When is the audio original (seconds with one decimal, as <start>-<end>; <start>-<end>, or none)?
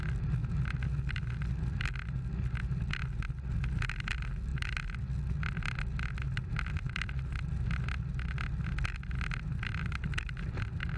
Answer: 0.0-11.0